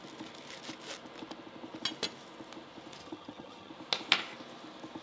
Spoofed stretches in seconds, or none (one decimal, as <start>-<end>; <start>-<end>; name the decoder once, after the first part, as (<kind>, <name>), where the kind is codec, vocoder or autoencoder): 3.0-3.7 (vocoder, HiFi-GAN)